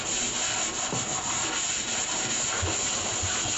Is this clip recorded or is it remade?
recorded